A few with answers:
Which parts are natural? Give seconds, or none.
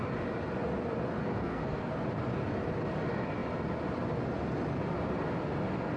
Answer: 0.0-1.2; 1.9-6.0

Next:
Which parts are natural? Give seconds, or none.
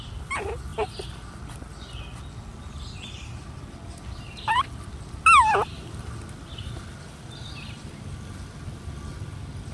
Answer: 0.0-9.7